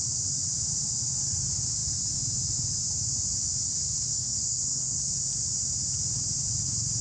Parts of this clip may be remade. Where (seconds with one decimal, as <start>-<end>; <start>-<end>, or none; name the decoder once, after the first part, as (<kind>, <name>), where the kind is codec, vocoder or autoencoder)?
4.1-5.0 (codec, SNAC)